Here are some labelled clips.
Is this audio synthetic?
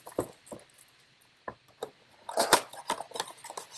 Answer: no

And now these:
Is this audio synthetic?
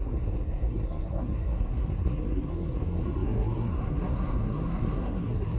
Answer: yes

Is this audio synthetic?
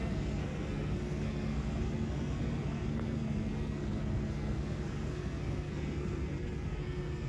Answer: yes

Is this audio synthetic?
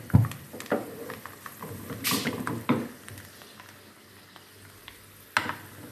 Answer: no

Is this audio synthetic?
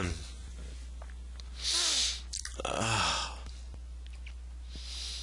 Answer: no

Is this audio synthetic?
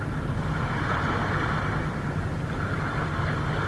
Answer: no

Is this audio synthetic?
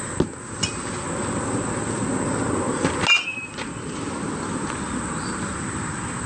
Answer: no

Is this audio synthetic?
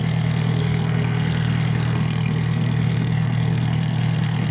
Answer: yes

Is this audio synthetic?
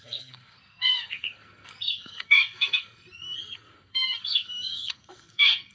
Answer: yes